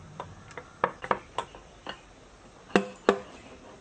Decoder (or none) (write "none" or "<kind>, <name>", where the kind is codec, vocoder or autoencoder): none